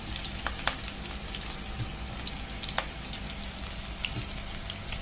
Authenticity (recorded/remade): recorded